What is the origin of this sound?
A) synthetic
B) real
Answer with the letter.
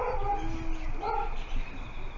B